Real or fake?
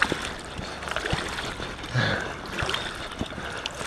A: real